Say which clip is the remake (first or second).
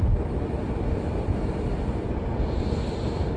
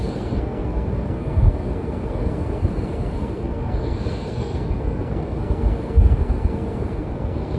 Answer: second